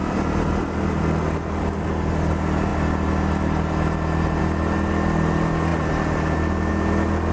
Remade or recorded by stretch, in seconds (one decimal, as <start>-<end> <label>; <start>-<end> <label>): 0.0-7.3 recorded